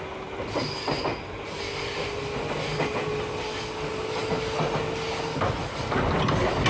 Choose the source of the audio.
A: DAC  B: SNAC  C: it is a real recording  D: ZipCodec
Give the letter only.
C